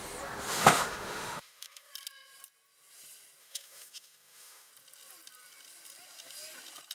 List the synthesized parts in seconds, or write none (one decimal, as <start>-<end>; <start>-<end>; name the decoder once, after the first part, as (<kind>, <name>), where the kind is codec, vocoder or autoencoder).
0.5-1.9 (autoencoder, DAC-VAE); 3.4-4.7